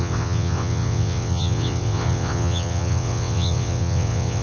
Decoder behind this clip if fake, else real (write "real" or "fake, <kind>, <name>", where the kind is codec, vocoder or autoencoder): fake, vocoder, WaveNeXt